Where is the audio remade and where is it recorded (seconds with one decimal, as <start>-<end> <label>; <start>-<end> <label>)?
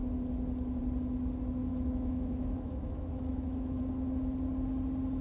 0.0-1.7 recorded; 1.7-3.8 remade; 3.8-5.2 recorded